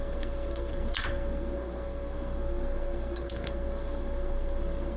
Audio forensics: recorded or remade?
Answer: remade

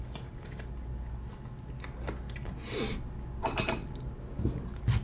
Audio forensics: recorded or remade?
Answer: recorded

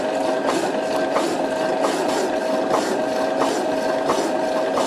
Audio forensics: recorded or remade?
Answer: recorded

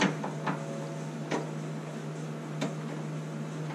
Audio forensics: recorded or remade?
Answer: recorded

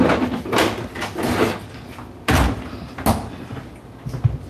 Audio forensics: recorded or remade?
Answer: recorded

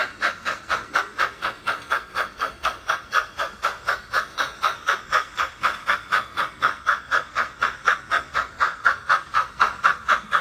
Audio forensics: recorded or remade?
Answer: remade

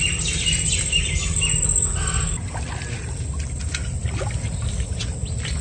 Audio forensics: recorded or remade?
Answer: recorded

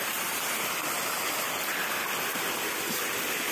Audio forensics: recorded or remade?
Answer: recorded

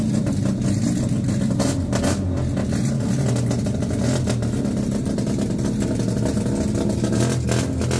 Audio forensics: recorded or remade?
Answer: recorded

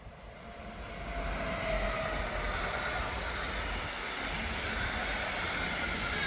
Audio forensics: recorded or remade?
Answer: recorded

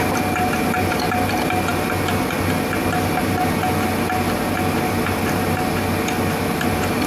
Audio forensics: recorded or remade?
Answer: recorded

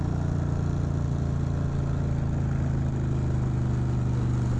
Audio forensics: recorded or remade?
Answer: recorded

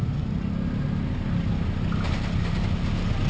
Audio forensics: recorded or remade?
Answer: recorded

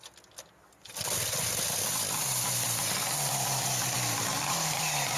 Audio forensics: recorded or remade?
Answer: recorded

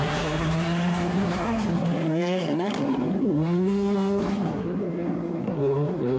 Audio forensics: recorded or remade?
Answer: remade